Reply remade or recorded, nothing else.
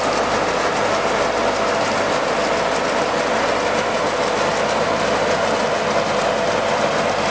recorded